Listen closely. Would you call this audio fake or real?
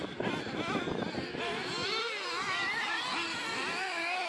real